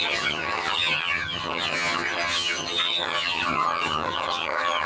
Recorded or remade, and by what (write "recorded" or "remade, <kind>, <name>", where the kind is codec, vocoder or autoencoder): remade, vocoder, HiFi-GAN